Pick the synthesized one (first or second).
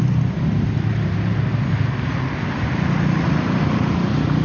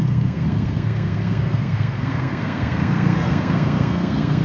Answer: second